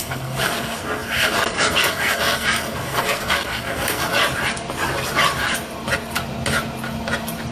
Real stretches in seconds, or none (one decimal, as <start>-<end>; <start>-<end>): 4.1-7.5